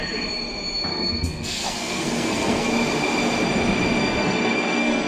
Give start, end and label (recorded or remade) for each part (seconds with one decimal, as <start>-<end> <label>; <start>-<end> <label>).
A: 0.0-0.9 recorded; 0.9-2.7 remade; 2.7-4.0 recorded; 4.0-5.1 remade